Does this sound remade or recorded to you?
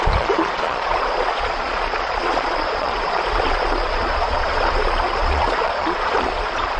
remade